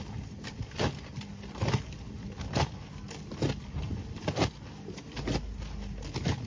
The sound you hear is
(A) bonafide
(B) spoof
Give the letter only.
A